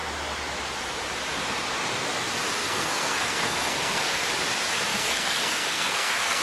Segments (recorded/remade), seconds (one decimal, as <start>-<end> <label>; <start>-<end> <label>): 0.0-2.6 recorded; 2.6-4.3 remade; 4.3-4.9 recorded; 4.9-6.4 remade